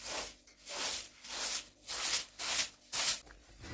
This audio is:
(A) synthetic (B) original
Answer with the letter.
B